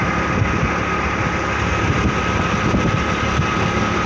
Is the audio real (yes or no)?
yes